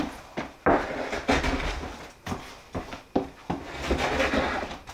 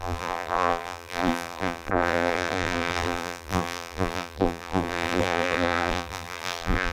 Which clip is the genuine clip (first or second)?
first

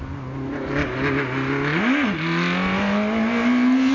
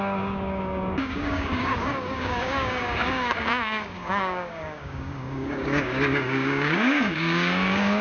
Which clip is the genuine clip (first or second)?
first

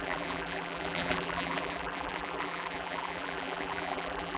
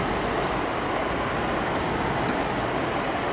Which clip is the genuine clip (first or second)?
second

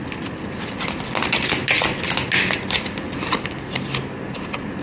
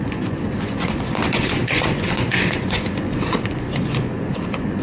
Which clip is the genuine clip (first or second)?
first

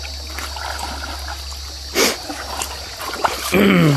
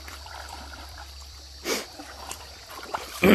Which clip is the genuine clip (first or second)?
first